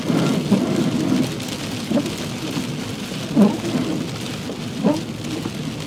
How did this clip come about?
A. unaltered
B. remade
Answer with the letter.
A